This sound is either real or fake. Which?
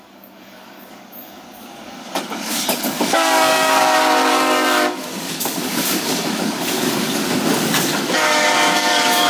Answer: fake